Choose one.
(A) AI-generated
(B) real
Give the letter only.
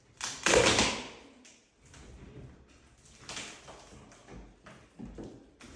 B